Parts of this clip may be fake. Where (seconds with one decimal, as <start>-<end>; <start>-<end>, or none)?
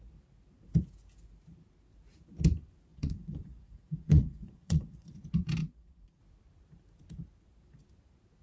2.9-5.1; 5.6-6.2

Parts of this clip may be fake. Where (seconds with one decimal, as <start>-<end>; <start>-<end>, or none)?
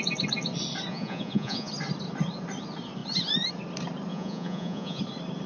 0.9-1.7; 4.1-5.0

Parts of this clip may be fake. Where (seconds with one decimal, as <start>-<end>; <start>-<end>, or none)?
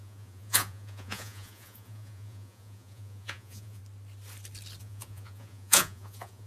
0.0-3.8; 4.8-6.5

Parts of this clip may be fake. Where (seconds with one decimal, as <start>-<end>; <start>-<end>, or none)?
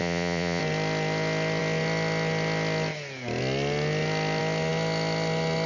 0.0-0.6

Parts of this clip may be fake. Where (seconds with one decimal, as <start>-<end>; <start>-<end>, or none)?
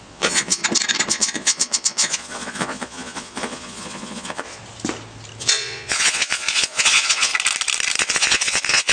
0.0-0.6; 1.1-4.6; 5.4-7.3; 8.0-8.9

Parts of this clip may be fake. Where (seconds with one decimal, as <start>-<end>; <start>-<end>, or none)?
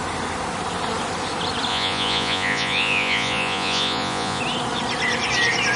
1.7-4.4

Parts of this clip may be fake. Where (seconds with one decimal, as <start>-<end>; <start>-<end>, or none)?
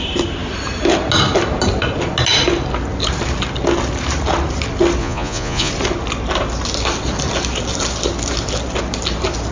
5.0-5.7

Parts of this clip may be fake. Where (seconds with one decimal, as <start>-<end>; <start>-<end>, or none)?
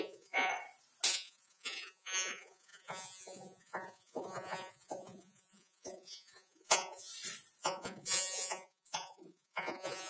0.0-0.5; 1.1-7.1; 7.6-10.1